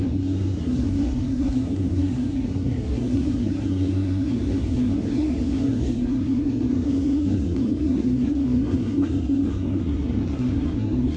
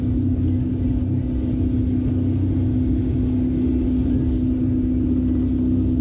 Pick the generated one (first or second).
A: first